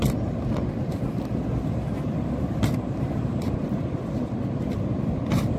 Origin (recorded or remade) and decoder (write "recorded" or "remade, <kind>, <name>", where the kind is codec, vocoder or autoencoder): recorded